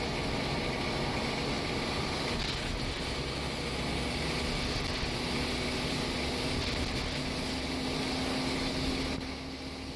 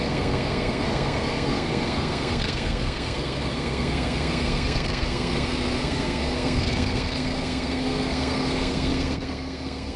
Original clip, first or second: first